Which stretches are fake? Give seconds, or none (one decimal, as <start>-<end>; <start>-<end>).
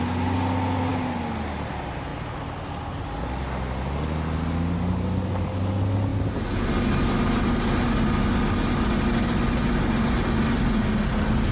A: none